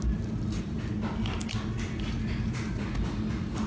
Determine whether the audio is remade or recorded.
recorded